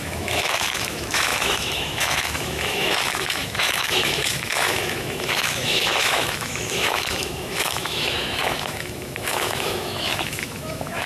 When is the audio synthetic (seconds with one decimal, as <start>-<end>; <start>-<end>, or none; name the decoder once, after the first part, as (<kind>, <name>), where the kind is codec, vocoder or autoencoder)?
0.0-11.1 (autoencoder, DAC-VAE)